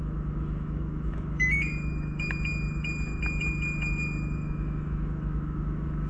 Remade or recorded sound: remade